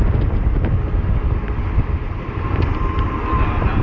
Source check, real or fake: fake